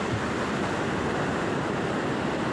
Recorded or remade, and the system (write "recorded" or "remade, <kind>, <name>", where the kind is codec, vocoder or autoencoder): recorded